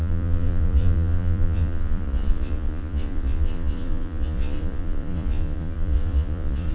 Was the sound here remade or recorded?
remade